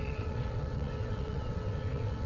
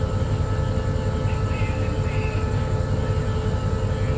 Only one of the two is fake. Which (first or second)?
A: first